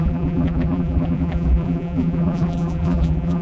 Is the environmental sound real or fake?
fake